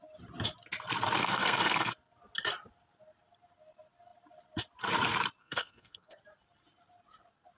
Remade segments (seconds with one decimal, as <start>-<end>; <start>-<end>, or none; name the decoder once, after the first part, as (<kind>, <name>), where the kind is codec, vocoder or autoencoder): 1.2-1.9 (codec, SNAC); 5.4-6.2